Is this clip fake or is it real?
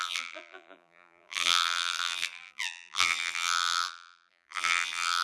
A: fake